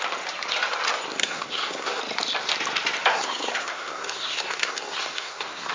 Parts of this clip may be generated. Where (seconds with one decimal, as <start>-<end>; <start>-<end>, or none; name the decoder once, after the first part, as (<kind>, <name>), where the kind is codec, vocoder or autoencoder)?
1.2-2.0 (codec, SNAC); 3.1-5.7